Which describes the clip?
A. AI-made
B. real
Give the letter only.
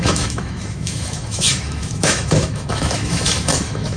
A